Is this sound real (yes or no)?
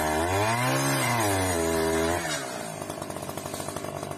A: yes